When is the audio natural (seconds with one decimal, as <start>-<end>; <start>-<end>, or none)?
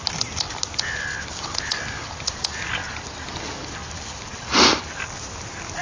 0.0-5.8